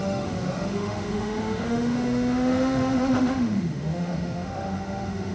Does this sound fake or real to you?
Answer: fake